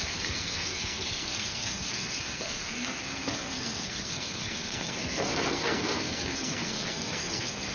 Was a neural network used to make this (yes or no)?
yes